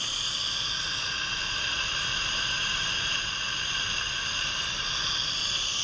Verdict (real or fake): real